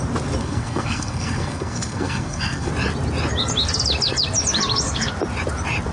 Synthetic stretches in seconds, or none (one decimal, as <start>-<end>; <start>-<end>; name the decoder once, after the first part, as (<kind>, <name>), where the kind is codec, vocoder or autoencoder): 0.4-2.7 (codec, SNAC)